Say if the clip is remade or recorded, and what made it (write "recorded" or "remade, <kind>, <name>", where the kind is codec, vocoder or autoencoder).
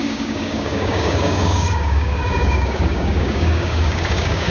remade, codec, DAC